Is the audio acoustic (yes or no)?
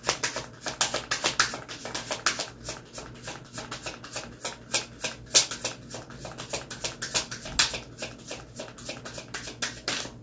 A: yes